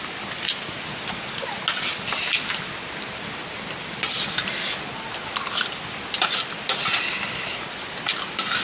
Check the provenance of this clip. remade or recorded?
recorded